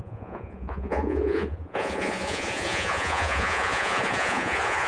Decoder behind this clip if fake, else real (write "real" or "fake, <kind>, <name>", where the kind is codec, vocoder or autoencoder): fake, vocoder, Vocos